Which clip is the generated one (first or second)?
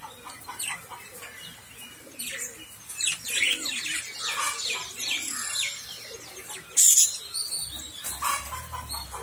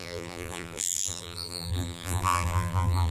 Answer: second